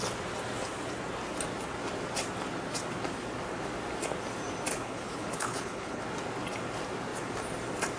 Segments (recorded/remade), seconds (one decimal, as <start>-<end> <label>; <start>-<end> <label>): 0.0-4.7 recorded; 4.7-6.0 remade; 6.0-8.0 recorded